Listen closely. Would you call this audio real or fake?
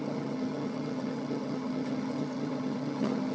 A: fake